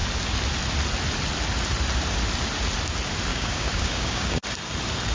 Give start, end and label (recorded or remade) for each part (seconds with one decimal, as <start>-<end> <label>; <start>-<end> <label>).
0.0-3.3 recorded; 3.3-4.4 remade; 4.4-5.1 recorded